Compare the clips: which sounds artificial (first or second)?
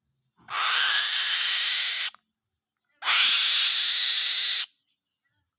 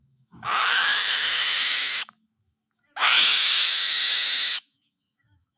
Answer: second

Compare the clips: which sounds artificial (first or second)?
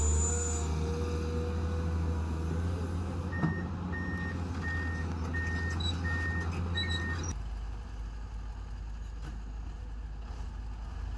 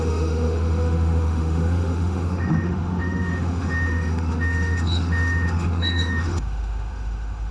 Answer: second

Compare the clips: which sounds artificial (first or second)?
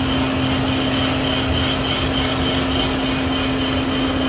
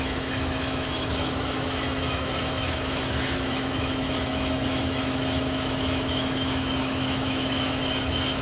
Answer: second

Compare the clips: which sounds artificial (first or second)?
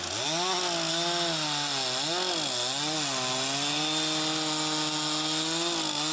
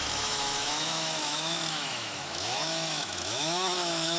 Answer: second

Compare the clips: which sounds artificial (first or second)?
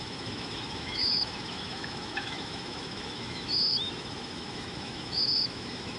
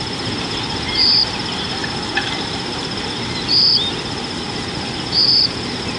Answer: first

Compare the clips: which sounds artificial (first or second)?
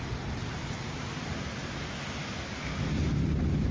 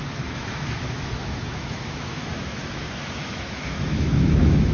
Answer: second